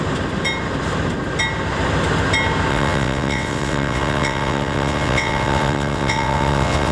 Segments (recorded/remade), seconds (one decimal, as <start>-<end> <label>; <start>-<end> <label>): 0.0-2.7 recorded; 2.7-6.9 remade